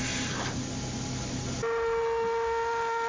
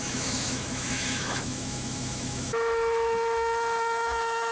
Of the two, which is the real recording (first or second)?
first